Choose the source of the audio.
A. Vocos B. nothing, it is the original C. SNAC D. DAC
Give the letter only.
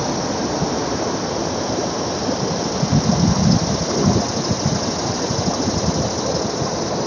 B